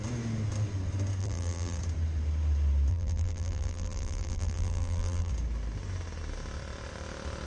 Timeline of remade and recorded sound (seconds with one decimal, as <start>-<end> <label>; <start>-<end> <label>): 0.0-1.2 recorded; 1.2-1.8 remade; 1.8-2.9 recorded; 2.9-5.3 remade; 5.3-7.5 recorded